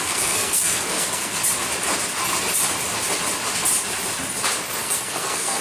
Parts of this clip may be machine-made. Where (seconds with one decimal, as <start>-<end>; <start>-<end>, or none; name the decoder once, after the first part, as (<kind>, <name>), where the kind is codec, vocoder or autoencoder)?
0.0-1.4 (codec, SNAC); 4.8-5.6